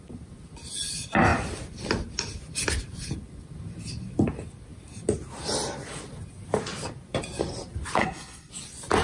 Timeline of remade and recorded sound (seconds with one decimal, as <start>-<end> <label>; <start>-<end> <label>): 0.0-8.0 recorded; 8.0-8.5 remade; 8.5-9.0 recorded

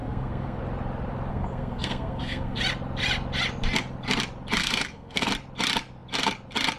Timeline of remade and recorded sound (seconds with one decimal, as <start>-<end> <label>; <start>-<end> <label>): 0.0-0.6 remade; 0.6-1.3 recorded; 1.3-2.6 remade; 2.6-4.6 recorded; 4.6-5.3 remade; 5.3-6.8 recorded

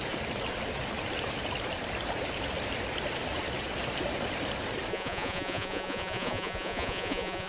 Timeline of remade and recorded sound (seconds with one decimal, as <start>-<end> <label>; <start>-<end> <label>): 0.0-4.9 recorded; 4.9-7.5 remade

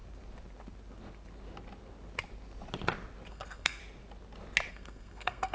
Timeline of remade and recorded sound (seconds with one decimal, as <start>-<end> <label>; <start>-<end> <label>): 0.0-3.3 recorded; 3.3-3.8 remade; 3.8-4.7 recorded; 4.7-5.5 remade

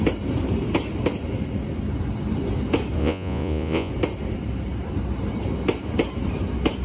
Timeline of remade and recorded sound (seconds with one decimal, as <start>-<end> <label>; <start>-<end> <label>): 0.0-3.0 recorded; 3.0-3.9 remade; 3.9-6.8 recorded

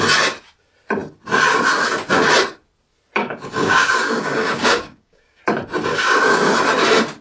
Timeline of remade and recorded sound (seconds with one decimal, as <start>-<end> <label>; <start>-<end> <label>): 0.0-3.2 recorded; 3.2-5.4 remade; 5.4-5.9 recorded; 5.9-6.5 remade; 6.5-7.2 recorded